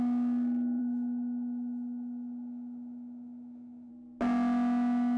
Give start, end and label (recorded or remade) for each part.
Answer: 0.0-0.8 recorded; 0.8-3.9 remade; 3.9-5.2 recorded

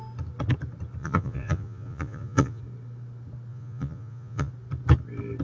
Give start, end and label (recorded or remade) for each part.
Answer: 0.0-1.0 recorded; 1.0-2.6 remade; 2.6-3.5 recorded; 3.5-4.5 remade; 4.5-5.4 recorded